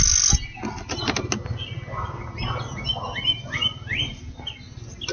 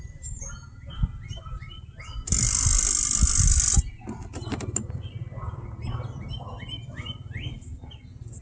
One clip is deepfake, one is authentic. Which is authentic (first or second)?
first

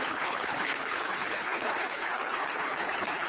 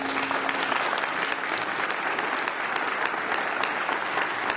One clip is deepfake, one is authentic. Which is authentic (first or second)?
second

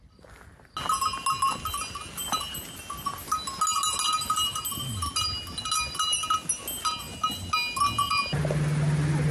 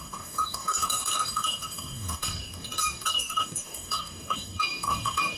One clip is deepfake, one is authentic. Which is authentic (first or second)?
first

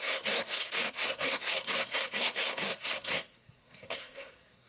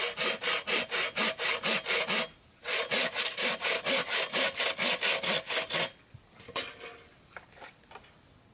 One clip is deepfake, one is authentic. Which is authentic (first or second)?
second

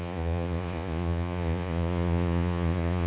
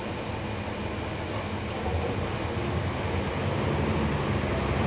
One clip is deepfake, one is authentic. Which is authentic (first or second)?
second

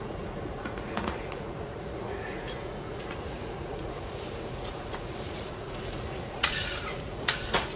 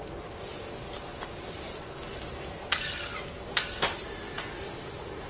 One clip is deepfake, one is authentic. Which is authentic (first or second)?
second